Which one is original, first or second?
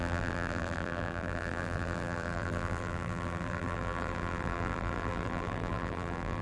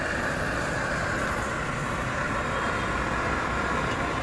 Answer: second